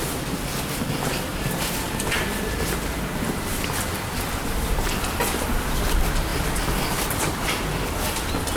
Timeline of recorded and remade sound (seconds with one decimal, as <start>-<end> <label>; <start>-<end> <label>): 0.0-1.3 recorded; 1.3-4.9 remade; 4.9-6.3 recorded; 6.3-7.3 remade; 7.3-8.6 recorded